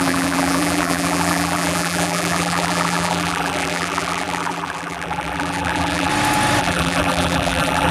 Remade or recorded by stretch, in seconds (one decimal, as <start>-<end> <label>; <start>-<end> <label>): 0.0-6.1 remade; 6.1-6.6 recorded; 6.6-7.9 remade